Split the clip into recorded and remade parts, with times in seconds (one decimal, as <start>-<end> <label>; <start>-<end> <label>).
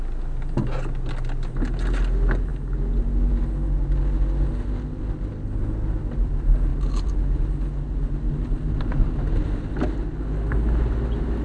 0.0-11.4 recorded